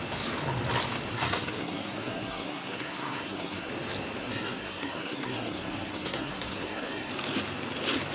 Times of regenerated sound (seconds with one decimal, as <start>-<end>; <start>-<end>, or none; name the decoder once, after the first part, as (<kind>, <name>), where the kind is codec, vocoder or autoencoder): 1.1-3.7 (codec, SNAC); 4.2-7.1